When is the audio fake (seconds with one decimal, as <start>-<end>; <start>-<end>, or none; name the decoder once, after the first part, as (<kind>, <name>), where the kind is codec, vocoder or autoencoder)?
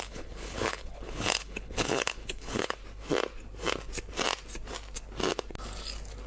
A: 0.0-2.8 (codec, HILCodec)